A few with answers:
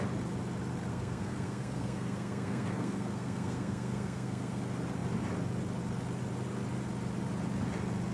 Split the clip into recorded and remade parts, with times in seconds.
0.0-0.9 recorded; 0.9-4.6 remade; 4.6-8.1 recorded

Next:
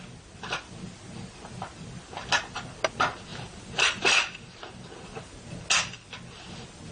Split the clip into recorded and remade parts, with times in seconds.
0.0-6.9 recorded

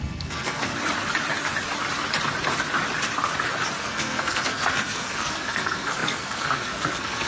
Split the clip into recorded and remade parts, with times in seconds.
0.0-0.7 remade; 0.7-3.8 recorded; 3.8-7.3 remade

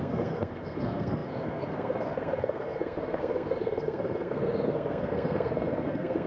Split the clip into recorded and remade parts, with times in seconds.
0.0-6.3 remade

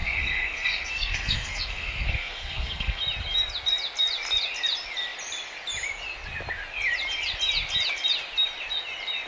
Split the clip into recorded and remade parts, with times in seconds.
0.0-3.0 remade; 3.0-9.3 recorded

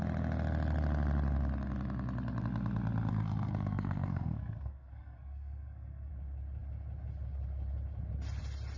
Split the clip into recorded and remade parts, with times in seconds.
0.0-3.1 recorded; 3.1-6.1 remade; 6.1-8.8 recorded

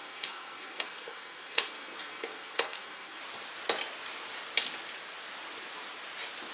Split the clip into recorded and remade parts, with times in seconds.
0.0-3.2 remade; 3.2-6.5 recorded